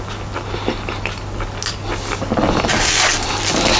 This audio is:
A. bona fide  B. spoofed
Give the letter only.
A